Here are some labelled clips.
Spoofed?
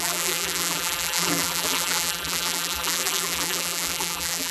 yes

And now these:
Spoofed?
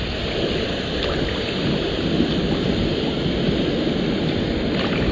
no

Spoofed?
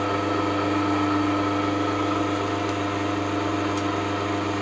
no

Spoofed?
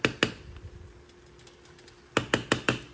no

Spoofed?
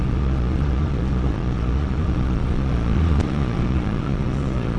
yes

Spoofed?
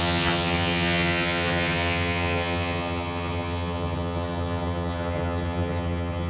yes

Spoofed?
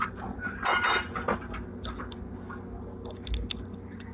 no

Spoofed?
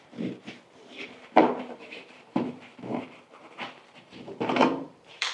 yes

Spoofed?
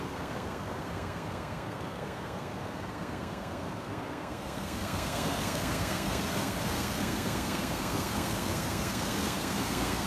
yes